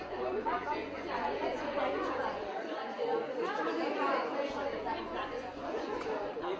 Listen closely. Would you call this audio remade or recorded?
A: remade